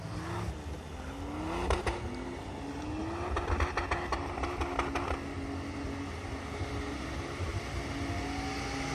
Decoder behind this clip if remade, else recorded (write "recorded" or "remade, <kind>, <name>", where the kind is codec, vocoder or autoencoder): recorded